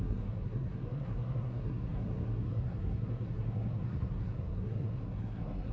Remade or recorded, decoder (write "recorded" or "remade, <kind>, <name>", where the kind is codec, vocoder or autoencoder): remade, codec, SNAC